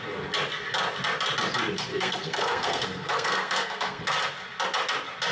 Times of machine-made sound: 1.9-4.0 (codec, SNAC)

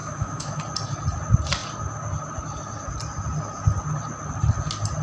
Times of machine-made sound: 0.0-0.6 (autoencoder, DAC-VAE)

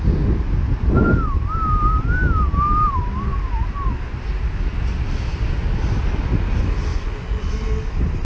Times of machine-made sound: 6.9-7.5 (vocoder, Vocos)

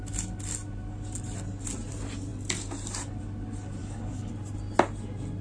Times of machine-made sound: 3.8-4.3 (codec, DAC)

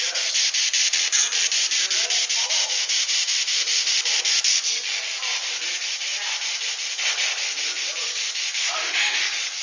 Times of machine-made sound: 2.4-4.0 (autoencoder, DAC-VAE); 8.6-9.2